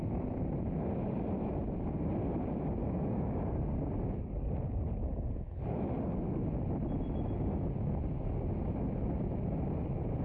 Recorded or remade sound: recorded